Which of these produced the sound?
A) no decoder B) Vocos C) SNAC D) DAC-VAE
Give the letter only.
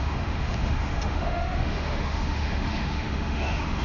D